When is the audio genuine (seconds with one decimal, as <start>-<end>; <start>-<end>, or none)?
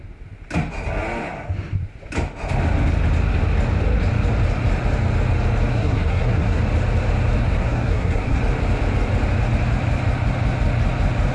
0.0-5.7; 6.6-7.4; 8.4-11.3